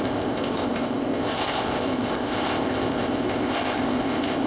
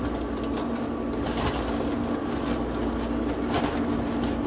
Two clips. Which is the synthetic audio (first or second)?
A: first